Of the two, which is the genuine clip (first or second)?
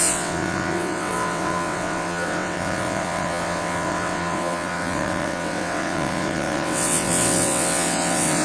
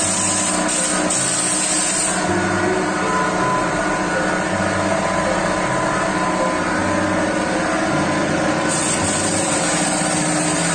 second